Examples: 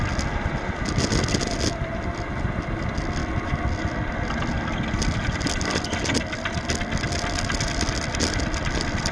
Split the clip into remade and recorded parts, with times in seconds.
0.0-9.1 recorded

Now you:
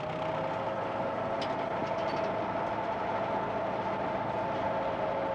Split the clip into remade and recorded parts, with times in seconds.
0.0-5.3 recorded

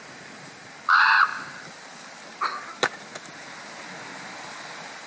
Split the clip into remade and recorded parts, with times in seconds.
0.0-5.1 recorded

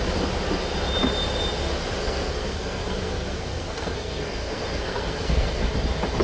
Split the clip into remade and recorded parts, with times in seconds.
0.0-2.0 recorded; 2.0-5.7 remade; 5.7-6.2 recorded

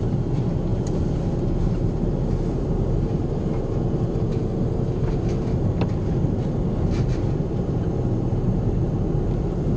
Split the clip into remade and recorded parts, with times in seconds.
0.0-9.8 recorded

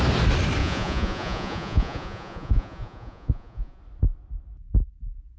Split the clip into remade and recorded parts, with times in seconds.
0.0-0.6 recorded; 0.6-3.8 remade; 3.8-5.4 recorded

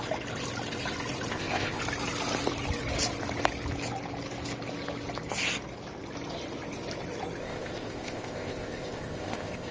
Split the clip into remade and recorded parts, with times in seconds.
0.0-1.3 recorded; 1.3-1.8 remade; 1.8-7.4 recorded; 7.4-9.7 remade

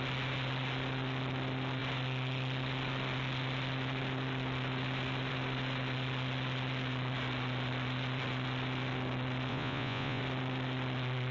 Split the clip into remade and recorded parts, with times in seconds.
0.0-9.5 recorded; 9.5-10.2 remade; 10.2-11.3 recorded